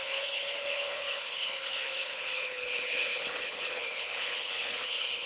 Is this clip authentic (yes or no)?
no